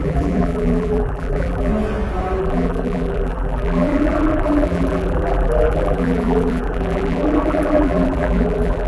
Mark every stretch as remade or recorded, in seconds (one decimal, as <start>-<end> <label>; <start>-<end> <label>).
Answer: 0.0-1.7 remade; 1.7-2.4 recorded; 2.4-8.9 remade